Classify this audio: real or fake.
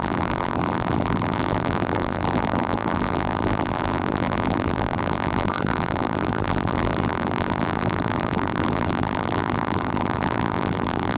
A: fake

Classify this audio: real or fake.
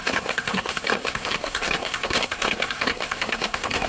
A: fake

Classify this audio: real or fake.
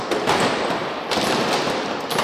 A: real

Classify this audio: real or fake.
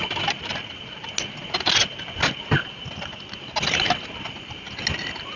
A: real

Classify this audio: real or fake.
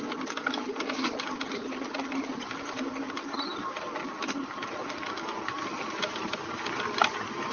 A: real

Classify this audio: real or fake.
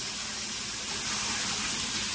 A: real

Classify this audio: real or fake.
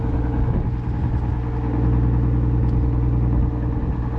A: real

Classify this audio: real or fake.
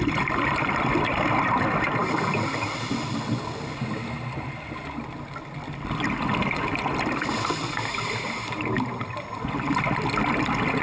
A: real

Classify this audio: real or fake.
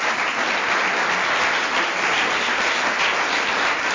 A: real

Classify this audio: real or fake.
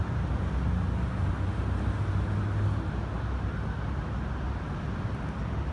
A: real